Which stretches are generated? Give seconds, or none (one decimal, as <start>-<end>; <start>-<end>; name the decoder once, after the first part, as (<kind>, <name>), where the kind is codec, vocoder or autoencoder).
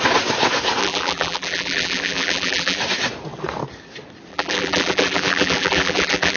0.8-2.8 (vocoder, BigVGAN v2); 4.3-6.4